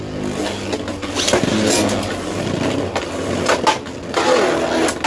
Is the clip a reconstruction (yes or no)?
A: no